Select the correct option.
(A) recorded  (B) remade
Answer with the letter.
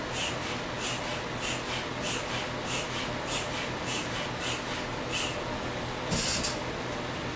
A